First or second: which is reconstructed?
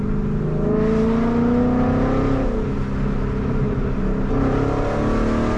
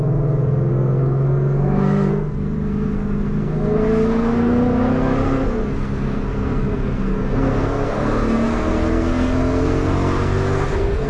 second